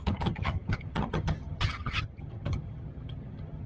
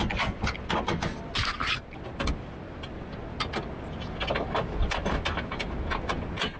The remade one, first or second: first